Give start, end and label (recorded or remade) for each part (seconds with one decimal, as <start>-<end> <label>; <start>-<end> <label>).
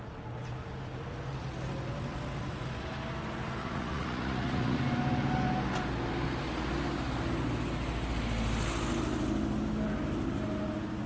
0.0-3.6 recorded; 3.6-4.8 remade; 4.8-11.1 recorded